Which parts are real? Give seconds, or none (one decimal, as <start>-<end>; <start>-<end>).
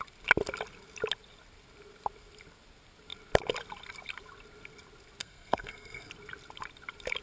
0.0-5.2; 6.1-7.2